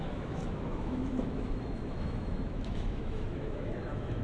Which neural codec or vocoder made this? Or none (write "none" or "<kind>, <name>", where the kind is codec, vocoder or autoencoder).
autoencoder, DAC-VAE